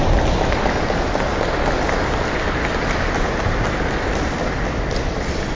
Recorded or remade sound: recorded